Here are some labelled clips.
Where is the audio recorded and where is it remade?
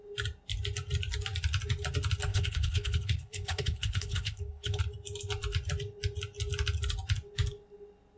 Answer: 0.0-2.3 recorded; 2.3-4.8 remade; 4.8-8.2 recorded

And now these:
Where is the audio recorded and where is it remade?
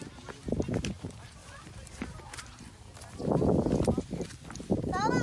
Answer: 0.0-5.2 recorded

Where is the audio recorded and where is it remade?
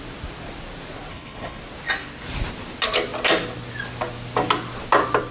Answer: 0.0-1.1 recorded; 1.1-1.6 remade; 1.6-5.3 recorded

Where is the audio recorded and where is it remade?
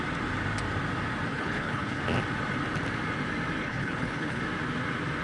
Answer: 0.0-1.3 recorded; 1.3-2.0 remade; 2.0-3.6 recorded; 3.6-4.4 remade; 4.4-5.2 recorded